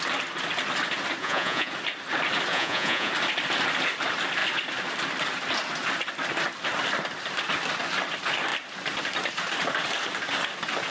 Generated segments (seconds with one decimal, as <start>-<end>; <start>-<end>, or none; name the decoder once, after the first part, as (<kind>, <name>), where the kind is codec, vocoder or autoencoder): 1.2-1.7 (vocoder, Vocos); 2.5-3.1